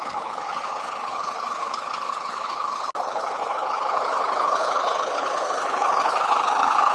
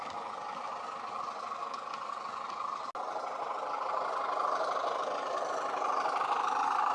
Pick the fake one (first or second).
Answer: first